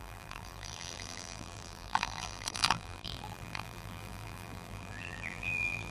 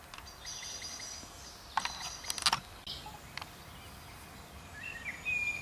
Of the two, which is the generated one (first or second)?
first